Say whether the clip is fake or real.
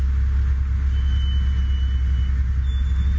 real